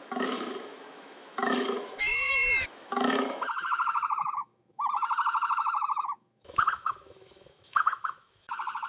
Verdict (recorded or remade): remade